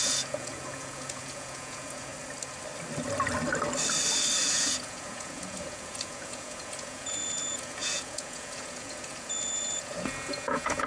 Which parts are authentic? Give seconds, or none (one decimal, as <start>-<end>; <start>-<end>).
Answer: 2.1-4.4